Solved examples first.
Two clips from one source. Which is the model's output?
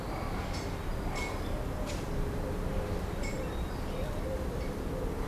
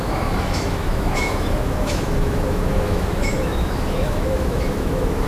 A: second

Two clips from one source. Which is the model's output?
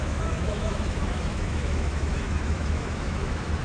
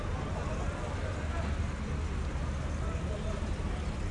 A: first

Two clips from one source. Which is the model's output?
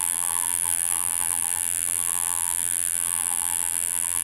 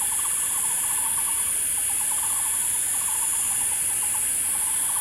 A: first